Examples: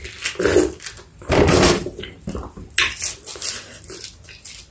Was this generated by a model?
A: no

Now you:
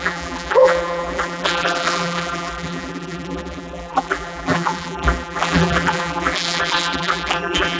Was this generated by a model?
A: yes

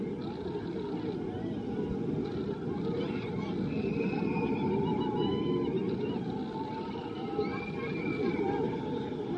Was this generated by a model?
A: no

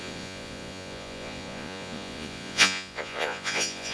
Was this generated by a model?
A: yes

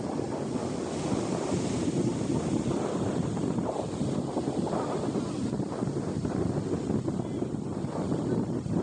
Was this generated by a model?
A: no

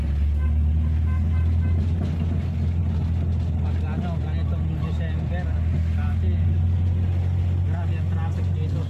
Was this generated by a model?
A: no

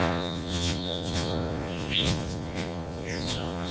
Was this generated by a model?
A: yes